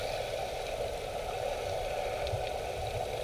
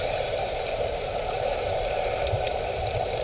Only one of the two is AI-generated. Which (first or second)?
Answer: second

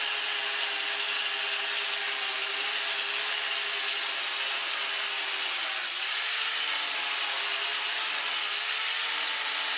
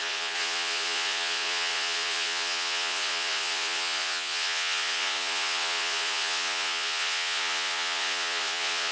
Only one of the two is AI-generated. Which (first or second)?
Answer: second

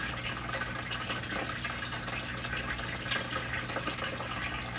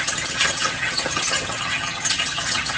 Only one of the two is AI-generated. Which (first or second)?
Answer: second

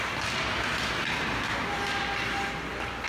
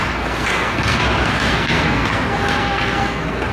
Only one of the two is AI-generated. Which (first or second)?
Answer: second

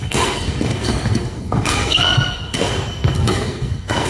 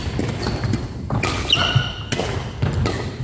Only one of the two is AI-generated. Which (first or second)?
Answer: first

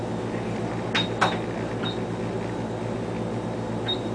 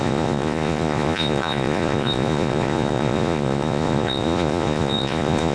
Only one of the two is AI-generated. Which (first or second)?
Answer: second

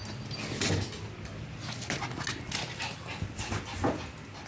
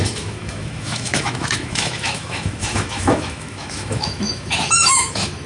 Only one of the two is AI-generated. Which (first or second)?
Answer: second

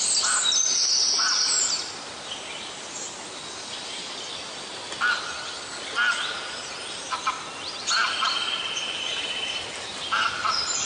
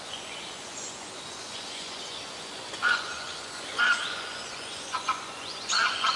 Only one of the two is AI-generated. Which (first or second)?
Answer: second